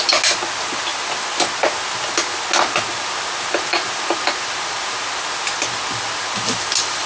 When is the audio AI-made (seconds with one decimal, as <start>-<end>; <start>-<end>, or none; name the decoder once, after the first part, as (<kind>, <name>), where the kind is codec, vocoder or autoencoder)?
none